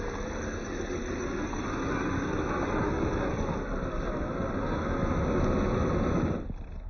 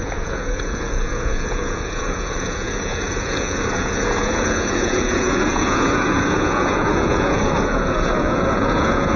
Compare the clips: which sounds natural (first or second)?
first